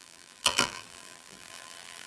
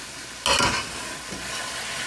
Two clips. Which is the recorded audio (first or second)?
second